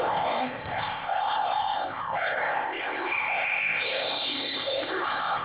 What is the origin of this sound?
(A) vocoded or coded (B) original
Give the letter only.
A